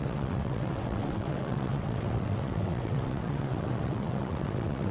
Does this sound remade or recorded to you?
remade